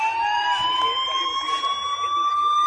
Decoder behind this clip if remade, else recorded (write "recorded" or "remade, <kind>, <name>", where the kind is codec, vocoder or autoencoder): recorded